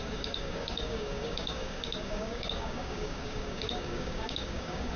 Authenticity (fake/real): fake